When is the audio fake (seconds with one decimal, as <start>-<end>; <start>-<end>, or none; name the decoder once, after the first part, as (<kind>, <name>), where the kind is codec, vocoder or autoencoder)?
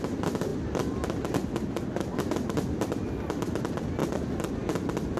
4.0-4.5 (vocoder, BigVGAN v2)